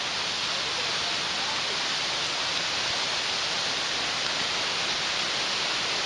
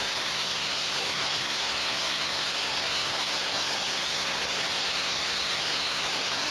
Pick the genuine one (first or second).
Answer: first